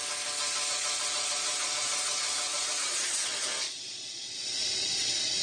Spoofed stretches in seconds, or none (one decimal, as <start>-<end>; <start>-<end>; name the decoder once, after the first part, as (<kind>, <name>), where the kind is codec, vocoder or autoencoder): 0.7-5.4 (vocoder, Vocos)

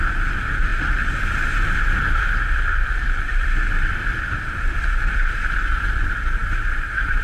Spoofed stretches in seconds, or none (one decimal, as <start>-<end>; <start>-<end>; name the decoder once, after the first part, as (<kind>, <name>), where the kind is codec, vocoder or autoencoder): none